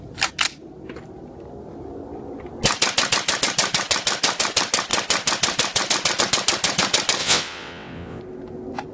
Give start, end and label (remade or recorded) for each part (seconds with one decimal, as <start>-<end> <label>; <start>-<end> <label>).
0.0-7.2 recorded; 7.2-8.2 remade; 8.2-8.9 recorded

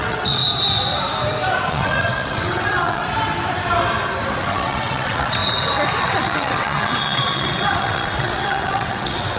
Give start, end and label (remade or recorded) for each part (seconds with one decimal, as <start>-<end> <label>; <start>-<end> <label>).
0.0-0.4 remade; 0.4-1.7 recorded; 1.7-3.0 remade; 3.0-4.4 recorded; 4.4-5.4 remade; 5.4-6.0 recorded; 6.0-9.4 remade

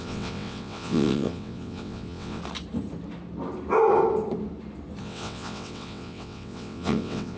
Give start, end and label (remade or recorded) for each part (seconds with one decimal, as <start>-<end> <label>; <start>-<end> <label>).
0.0-2.4 remade; 2.4-5.0 recorded; 5.0-7.4 remade

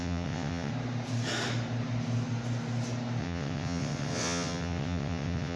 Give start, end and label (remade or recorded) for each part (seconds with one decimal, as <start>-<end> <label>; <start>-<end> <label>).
0.0-0.7 remade; 0.7-3.2 recorded; 3.2-5.6 remade

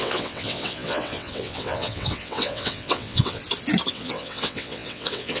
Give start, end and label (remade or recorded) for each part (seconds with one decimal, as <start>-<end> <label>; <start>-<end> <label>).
0.0-3.4 remade; 3.4-3.9 recorded; 3.9-5.4 remade

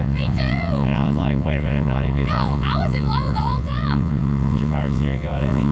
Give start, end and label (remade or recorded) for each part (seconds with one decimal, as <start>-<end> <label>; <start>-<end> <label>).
0.0-5.7 remade

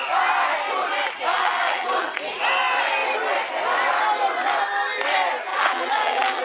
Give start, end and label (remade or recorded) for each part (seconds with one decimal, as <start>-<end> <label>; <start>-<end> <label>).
0.0-1.3 recorded; 1.3-2.2 remade; 2.2-5.5 recorded; 5.5-6.4 remade

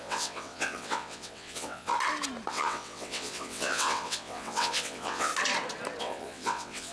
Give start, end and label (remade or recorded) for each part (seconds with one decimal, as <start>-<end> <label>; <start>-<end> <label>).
0.0-1.9 remade; 1.9-2.5 recorded; 2.5-5.3 remade; 5.3-6.0 recorded; 6.0-6.9 remade